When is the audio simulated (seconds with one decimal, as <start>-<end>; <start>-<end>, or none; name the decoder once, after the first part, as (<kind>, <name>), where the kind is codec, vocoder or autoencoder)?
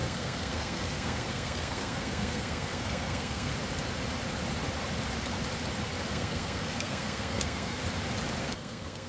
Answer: 0.0-3.5 (codec, SNAC); 6.1-7.8; 8.4-9.1